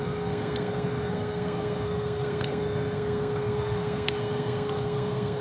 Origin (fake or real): fake